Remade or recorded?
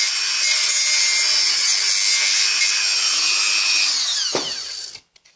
recorded